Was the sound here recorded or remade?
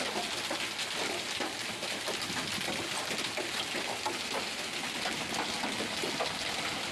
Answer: recorded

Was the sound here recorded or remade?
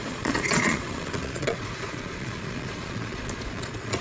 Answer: remade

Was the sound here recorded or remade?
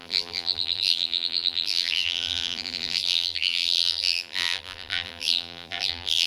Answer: remade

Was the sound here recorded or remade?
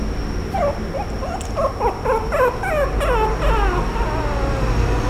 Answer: recorded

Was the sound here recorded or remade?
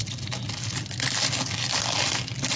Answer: recorded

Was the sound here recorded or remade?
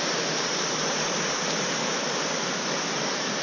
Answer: recorded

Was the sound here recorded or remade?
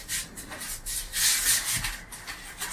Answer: recorded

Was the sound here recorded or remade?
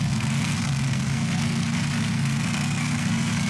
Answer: remade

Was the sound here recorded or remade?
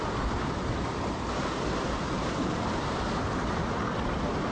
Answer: recorded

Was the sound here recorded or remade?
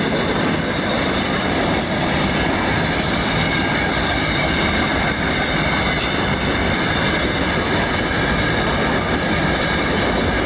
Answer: recorded